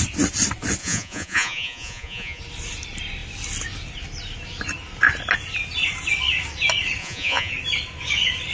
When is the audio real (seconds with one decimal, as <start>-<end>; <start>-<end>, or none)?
0.0-0.8; 2.4-7.0; 7.5-8.5